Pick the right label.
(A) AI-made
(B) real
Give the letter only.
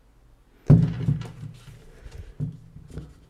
B